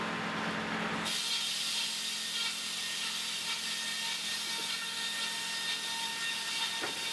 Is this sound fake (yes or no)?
no